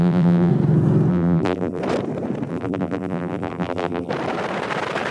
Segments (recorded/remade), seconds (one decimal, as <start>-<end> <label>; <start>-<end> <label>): 0.0-0.5 remade; 0.5-1.1 recorded; 1.1-1.8 remade; 1.8-2.5 recorded; 2.5-4.1 remade; 4.1-5.1 recorded